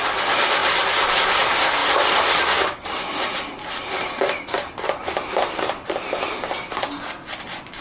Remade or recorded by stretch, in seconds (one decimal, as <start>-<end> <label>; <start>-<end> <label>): 0.0-7.8 recorded